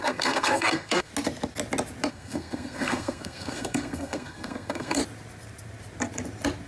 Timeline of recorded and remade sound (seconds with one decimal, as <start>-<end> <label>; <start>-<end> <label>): 0.0-1.1 remade; 1.1-2.1 recorded; 2.1-5.0 remade; 5.0-6.7 recorded